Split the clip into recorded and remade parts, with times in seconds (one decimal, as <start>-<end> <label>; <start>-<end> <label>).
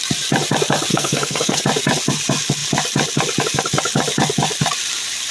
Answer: 0.0-0.9 recorded; 0.9-1.6 remade; 1.6-5.3 recorded